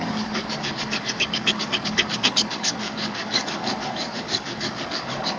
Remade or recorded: remade